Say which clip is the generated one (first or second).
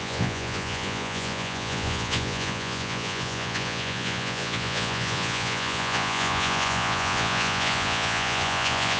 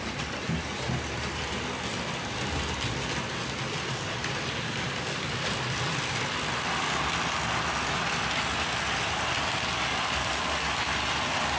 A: first